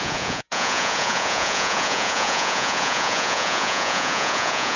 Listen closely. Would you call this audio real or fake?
fake